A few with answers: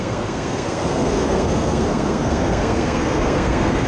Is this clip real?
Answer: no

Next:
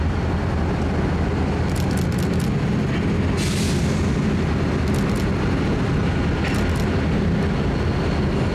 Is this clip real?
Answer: yes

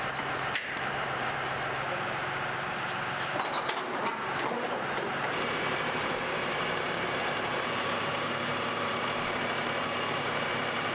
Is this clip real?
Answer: no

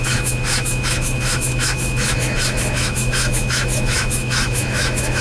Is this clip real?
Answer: no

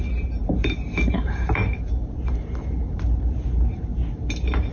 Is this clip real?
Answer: no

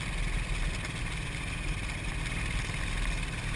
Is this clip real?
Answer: yes